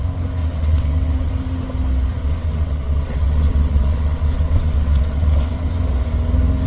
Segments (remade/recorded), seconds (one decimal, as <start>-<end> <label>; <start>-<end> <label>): 0.0-0.4 recorded; 0.4-1.3 remade; 1.3-2.2 recorded; 2.2-5.7 remade; 5.7-6.7 recorded